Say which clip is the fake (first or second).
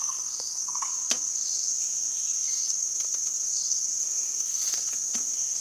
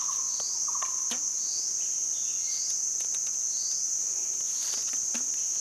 first